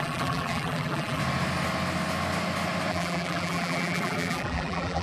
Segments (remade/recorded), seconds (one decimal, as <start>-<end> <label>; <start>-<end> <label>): 0.0-1.2 remade; 1.2-2.9 recorded; 2.9-5.0 remade